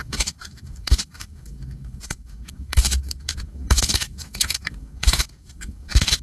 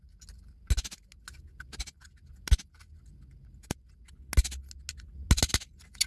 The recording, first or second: second